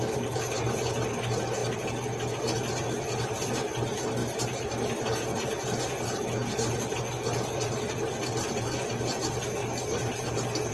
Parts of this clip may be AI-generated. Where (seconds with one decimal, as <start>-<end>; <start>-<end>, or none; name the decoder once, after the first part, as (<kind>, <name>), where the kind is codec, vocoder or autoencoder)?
4.2-5.4 (vocoder, BigVGAN v2)